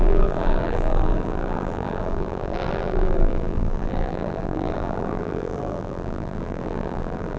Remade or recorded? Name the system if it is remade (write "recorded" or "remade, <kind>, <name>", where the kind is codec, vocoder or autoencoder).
remade, vocoder, BigVGAN v2